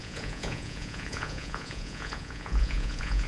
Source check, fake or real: fake